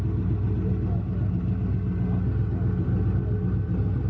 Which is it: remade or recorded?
recorded